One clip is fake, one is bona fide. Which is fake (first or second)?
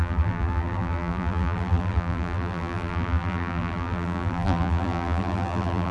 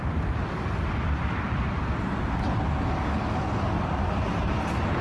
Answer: first